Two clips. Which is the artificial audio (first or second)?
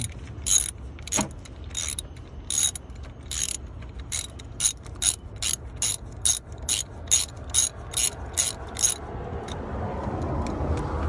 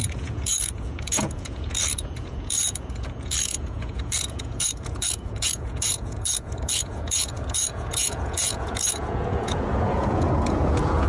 second